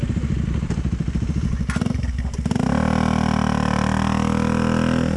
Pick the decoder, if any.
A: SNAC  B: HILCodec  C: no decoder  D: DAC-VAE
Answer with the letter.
C